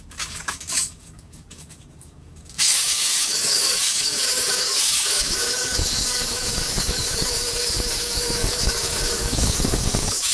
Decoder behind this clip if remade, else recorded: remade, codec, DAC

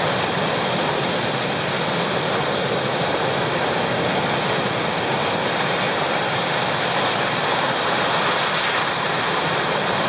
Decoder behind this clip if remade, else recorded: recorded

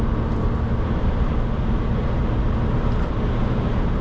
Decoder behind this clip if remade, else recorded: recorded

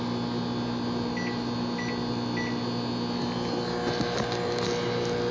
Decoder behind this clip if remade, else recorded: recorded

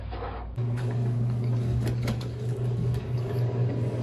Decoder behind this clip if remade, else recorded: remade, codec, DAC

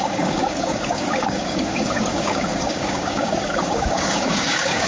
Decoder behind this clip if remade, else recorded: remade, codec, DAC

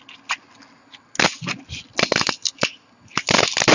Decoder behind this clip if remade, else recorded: recorded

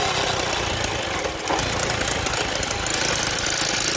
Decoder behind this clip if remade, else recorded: recorded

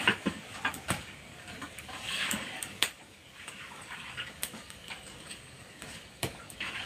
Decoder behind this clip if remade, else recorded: remade, codec, DAC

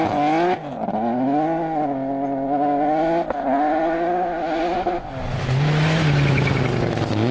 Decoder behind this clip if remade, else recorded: recorded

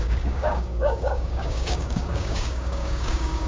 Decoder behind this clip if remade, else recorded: remade, codec, DAC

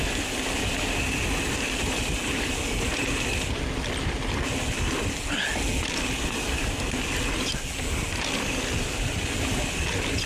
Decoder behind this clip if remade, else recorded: recorded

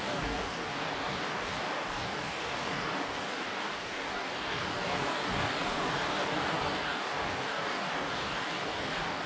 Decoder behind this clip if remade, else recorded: remade, codec, DAC